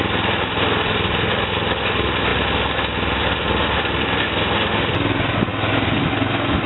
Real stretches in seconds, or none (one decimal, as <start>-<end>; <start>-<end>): 0.0-6.7